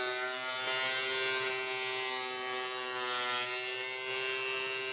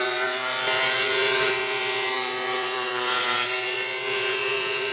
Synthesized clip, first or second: second